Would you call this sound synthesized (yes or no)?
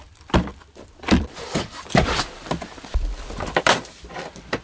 yes